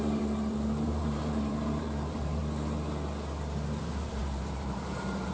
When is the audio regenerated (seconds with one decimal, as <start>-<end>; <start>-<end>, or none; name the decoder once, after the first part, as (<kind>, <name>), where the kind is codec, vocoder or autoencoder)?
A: 0.0-2.4 (vocoder, BigVGAN v2); 3.8-5.3